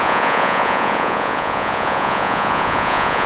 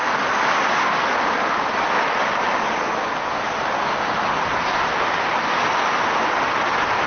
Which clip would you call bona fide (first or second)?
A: second